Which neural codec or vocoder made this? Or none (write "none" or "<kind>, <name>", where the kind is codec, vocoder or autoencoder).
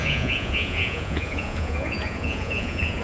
vocoder, Vocos